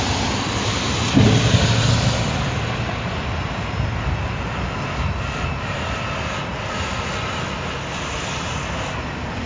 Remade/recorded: recorded